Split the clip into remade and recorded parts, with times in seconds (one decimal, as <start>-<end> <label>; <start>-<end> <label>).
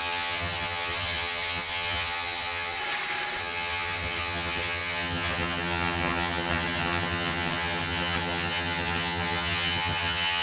0.0-2.8 remade; 2.8-3.4 recorded; 3.4-10.4 remade